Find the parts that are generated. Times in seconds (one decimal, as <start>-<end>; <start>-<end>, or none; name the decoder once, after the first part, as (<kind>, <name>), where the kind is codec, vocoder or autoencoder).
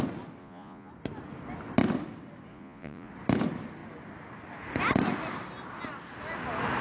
0.4-0.9 (vocoder, Vocos); 2.5-3.1